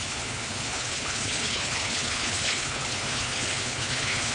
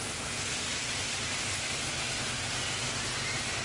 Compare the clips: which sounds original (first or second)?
second